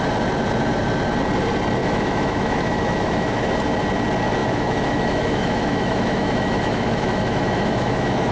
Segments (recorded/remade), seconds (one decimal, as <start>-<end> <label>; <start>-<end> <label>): 0.0-1.8 recorded; 1.8-3.5 remade; 3.5-4.4 recorded; 4.4-8.3 remade